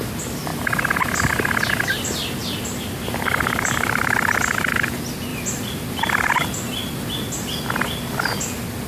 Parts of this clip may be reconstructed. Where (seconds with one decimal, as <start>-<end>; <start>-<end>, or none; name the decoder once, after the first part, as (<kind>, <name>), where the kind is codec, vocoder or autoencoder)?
none